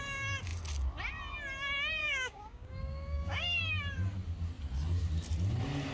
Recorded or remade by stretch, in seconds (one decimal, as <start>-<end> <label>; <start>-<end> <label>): 0.0-2.0 recorded; 2.0-3.6 remade; 3.6-5.9 recorded